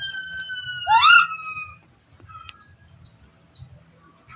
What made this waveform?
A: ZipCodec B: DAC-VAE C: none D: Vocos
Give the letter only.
C